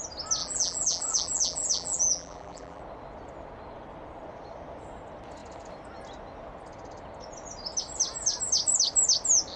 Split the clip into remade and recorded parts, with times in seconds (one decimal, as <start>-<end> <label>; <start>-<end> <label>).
0.0-0.4 recorded; 0.4-2.8 remade; 2.8-9.6 recorded